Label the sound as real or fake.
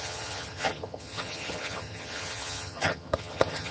fake